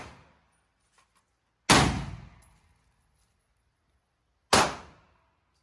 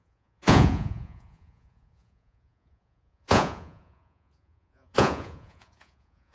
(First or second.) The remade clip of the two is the second